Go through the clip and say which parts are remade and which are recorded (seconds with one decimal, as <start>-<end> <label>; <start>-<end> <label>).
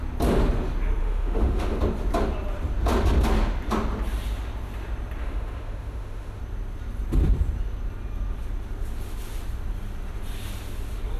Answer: 0.0-1.0 recorded; 1.0-1.8 remade; 1.8-5.2 recorded; 5.2-6.4 remade; 6.4-11.2 recorded